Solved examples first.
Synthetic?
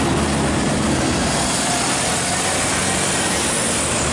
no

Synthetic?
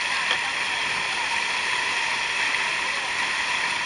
no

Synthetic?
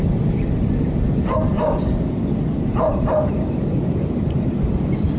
yes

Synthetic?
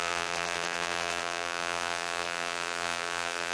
yes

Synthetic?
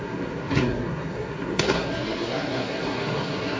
yes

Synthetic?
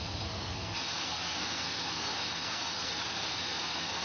yes